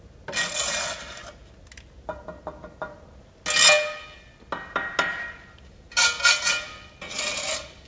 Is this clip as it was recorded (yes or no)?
yes